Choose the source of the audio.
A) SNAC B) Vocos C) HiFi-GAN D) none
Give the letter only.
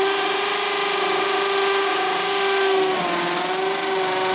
D